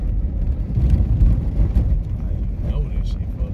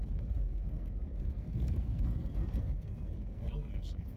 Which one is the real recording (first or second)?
first